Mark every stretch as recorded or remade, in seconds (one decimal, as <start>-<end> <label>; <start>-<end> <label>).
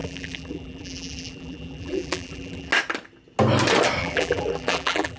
0.0-2.7 remade; 2.7-4.0 recorded; 4.0-5.2 remade